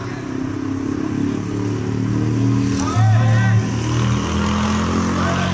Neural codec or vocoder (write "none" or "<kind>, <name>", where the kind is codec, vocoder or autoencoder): none